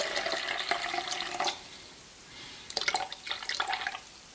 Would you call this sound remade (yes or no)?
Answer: no